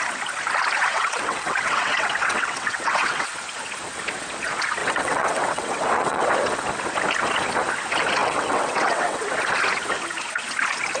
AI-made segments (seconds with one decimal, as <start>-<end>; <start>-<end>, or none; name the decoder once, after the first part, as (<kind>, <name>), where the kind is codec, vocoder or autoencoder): 0.9-3.3 (vocoder, WaveNeXt); 4.8-6.3; 8.2-9.2